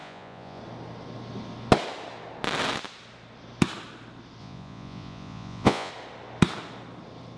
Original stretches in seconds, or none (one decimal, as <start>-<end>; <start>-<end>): 0.6-4.4; 5.9-7.4

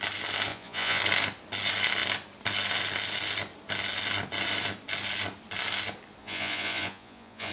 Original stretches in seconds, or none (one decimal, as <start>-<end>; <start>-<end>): 0.0-0.5; 1.0-6.2

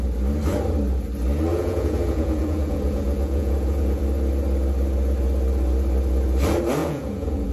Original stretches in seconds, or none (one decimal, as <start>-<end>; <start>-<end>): 0.0-1.5; 4.0-6.8

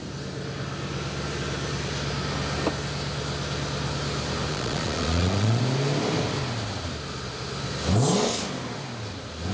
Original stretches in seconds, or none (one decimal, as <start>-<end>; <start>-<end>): 0.0-4.5; 5.6-9.5

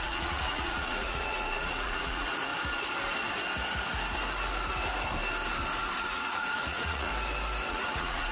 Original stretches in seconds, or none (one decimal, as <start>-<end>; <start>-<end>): 2.5-6.0; 7.1-7.7